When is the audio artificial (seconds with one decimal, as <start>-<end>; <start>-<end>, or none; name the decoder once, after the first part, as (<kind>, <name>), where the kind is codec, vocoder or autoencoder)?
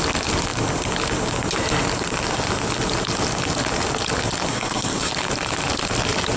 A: 4.5-5.1 (codec, SNAC)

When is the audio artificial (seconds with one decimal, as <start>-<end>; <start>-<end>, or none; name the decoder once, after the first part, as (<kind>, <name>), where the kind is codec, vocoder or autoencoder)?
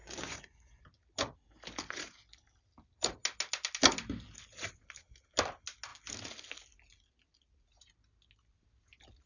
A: 0.0-0.8 (vocoder, Vocos)